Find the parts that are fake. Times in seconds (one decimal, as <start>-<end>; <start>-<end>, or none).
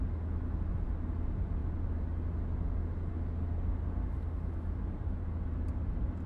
none